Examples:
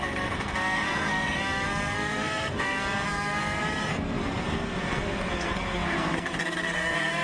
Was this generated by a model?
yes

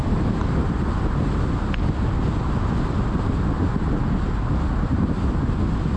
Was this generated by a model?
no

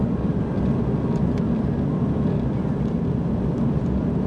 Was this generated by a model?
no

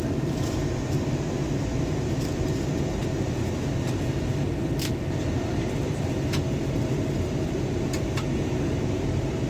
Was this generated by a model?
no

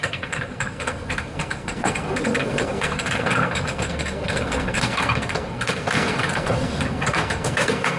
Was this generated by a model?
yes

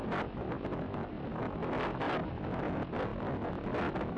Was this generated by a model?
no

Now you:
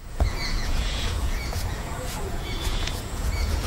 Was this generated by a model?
yes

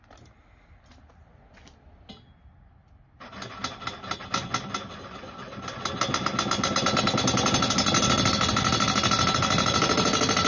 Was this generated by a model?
no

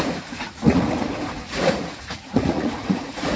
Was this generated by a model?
yes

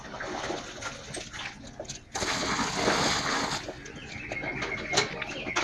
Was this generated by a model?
no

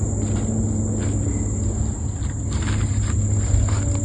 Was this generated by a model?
no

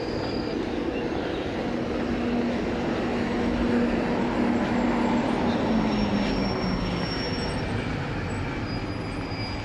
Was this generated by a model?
no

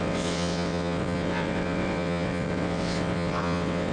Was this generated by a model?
yes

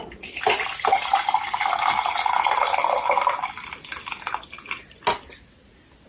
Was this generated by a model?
no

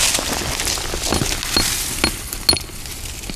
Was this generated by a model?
no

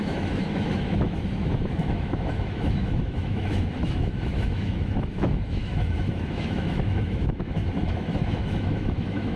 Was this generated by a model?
yes